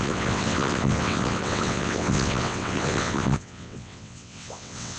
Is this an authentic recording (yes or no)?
no